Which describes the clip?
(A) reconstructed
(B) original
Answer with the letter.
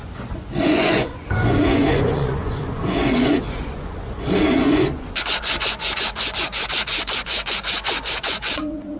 A